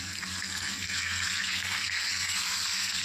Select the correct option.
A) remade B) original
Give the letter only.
A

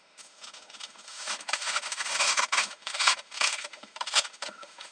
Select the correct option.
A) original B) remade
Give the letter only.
B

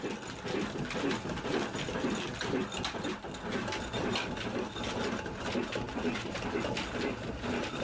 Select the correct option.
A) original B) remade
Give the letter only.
A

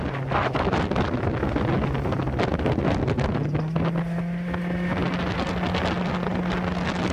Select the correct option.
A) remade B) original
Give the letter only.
B